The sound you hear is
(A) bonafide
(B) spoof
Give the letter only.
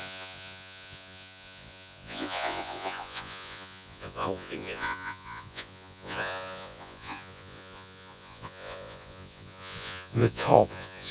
B